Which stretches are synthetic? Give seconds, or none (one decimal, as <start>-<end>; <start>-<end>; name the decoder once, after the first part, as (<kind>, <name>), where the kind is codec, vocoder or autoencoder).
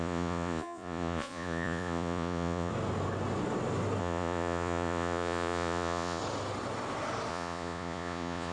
0.0-2.7 (vocoder, Vocos); 4.0-6.2; 7.3-8.5